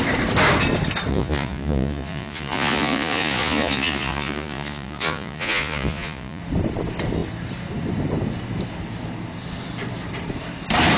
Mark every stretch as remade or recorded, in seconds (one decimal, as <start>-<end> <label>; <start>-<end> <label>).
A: 0.0-1.1 recorded; 1.1-6.4 remade; 6.4-11.0 recorded